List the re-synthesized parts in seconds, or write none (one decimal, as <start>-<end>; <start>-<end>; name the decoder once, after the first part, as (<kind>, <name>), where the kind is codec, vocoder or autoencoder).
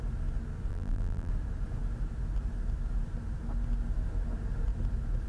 0.7-1.3 (vocoder, BigVGAN v2)